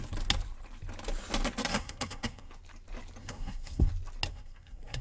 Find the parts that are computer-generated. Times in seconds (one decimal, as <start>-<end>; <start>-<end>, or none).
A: 1.7-2.5; 3.2-3.9; 4.3-5.0

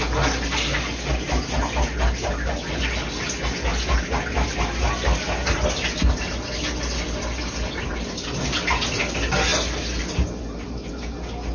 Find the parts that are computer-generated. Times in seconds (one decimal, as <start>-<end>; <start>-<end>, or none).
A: none

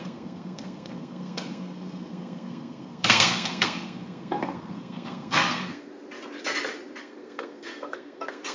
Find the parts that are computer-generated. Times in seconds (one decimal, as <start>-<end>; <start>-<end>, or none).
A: 0.0-5.9; 7.0-8.5

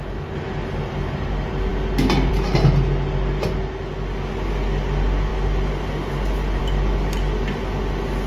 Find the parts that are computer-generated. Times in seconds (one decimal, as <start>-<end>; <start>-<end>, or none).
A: none

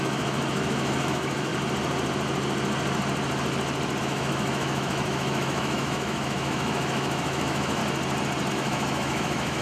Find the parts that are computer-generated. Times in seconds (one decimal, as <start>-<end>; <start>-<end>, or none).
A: 0.0-1.5; 4.0-7.8; 8.5-9.6

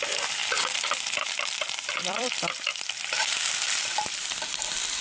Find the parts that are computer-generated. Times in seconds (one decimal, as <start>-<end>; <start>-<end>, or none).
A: 0.0-5.0

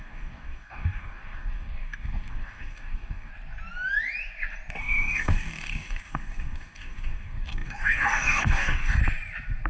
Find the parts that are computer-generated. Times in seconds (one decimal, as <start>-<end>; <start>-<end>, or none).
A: 0.0-3.3; 4.8-9.0

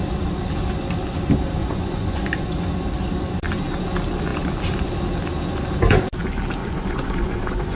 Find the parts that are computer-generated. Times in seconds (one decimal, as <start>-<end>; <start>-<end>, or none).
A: 1.6-2.5; 6.6-7.8